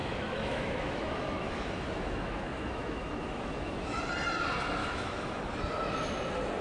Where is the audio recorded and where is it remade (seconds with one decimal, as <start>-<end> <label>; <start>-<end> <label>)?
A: 0.0-4.0 remade; 4.0-4.8 recorded; 4.8-5.4 remade; 5.4-6.6 recorded